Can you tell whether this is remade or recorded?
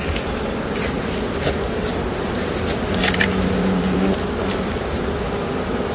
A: recorded